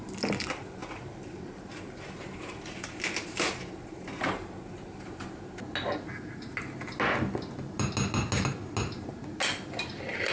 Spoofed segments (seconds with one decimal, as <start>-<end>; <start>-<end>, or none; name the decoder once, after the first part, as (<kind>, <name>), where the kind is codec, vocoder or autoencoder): 0.8-5.5 (vocoder, BigVGAN v2)